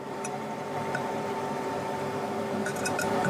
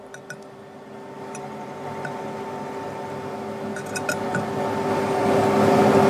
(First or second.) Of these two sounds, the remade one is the first